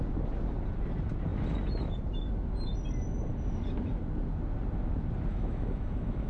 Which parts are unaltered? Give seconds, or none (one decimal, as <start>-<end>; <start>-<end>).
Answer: 0.0-5.3